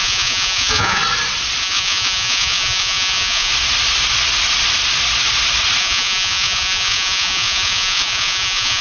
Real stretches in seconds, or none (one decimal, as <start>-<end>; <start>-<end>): 1.0-1.6; 3.5-5.8